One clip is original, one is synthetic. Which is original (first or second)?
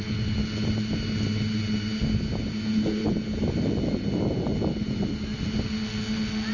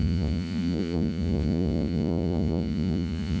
first